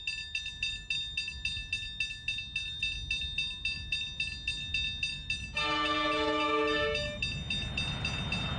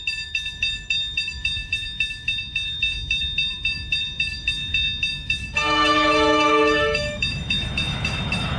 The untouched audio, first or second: first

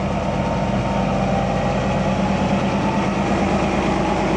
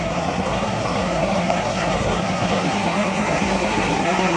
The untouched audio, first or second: first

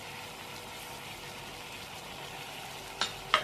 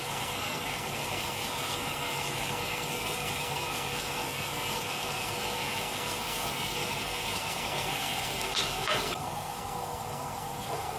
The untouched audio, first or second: first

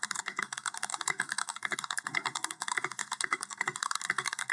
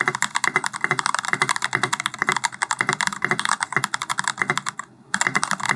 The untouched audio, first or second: second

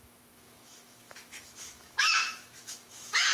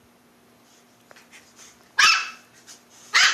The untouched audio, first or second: second